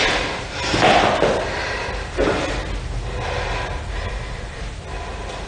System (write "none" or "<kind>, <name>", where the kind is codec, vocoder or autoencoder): none